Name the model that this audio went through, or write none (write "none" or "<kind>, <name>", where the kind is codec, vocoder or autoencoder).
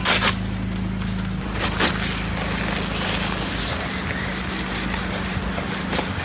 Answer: none